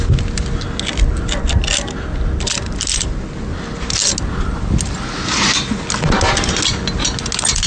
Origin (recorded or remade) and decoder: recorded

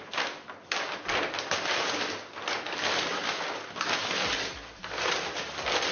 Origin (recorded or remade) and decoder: recorded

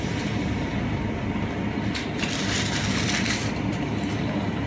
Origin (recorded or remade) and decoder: remade, vocoder, BigVGAN v2